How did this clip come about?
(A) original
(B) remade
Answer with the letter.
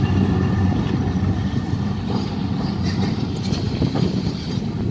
A